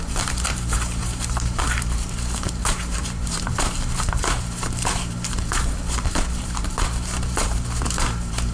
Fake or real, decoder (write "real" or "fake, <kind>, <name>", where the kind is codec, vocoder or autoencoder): fake, vocoder, BigVGAN v2